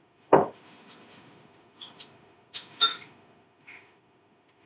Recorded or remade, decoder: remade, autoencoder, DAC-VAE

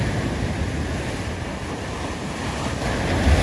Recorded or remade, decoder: recorded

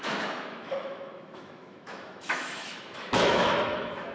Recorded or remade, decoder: remade, autoencoder, DAC-VAE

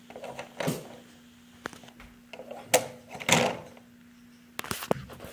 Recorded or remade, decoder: recorded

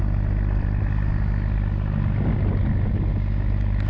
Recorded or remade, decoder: recorded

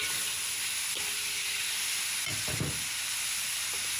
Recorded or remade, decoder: recorded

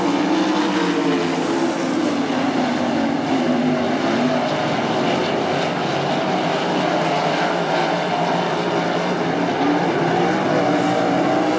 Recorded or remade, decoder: recorded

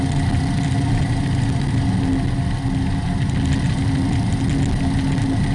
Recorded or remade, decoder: recorded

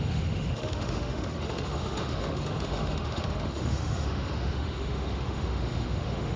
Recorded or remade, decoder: remade, autoencoder, DAC-VAE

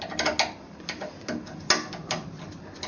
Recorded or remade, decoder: recorded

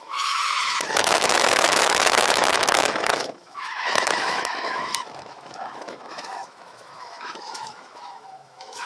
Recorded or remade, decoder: remade, autoencoder, DAC-VAE